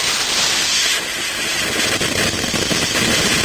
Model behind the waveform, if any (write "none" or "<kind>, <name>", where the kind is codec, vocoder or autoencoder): none